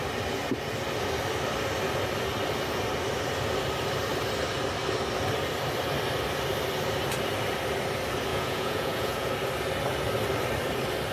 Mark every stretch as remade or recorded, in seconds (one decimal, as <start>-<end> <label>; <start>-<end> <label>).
0.0-8.3 recorded; 8.3-9.3 remade; 9.3-11.1 recorded